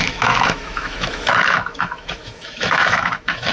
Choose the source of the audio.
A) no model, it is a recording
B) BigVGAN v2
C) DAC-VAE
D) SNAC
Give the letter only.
C